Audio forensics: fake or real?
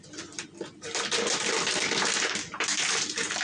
real